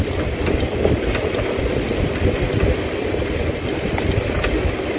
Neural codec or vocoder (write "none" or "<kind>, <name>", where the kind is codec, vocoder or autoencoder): none